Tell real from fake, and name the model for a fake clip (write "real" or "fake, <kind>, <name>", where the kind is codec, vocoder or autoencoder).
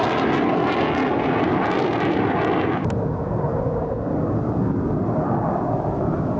real